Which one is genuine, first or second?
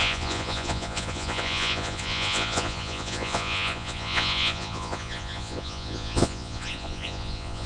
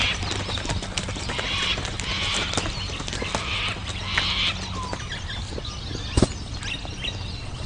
second